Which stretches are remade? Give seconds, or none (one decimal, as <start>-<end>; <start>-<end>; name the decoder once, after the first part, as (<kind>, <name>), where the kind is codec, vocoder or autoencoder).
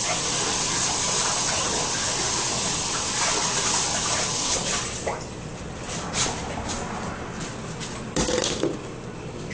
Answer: 5.5-6.6 (vocoder, BigVGAN v2)